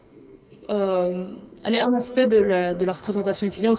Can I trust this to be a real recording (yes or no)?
no